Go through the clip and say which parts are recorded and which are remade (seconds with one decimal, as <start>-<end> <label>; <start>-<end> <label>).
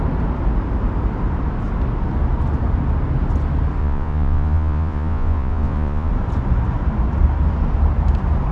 0.0-3.8 recorded; 3.8-6.1 remade; 6.1-8.5 recorded